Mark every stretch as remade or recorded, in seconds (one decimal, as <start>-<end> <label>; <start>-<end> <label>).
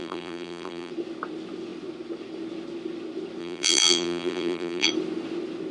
0.0-0.9 remade; 0.9-3.4 recorded; 3.4-4.9 remade; 4.9-5.7 recorded